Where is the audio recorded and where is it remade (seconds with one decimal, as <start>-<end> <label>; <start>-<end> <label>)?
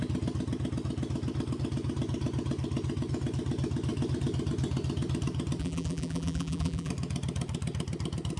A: 0.0-5.6 recorded; 5.6-6.9 remade; 6.9-8.4 recorded